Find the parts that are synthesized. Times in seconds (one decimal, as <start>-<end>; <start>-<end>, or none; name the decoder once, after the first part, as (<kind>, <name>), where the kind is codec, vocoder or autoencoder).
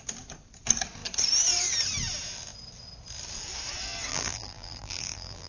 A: 4.1-5.5 (vocoder, BigVGAN v2)